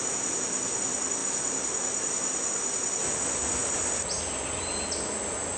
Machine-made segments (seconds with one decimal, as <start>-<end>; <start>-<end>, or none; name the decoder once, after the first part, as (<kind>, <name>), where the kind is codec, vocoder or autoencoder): none